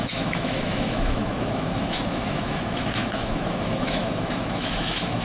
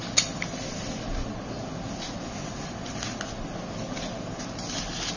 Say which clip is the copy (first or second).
first